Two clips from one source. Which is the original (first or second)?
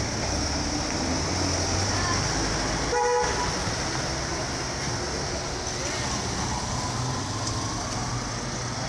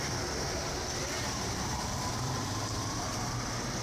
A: first